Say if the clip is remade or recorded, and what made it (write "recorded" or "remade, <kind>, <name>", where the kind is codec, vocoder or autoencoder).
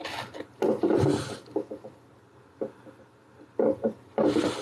recorded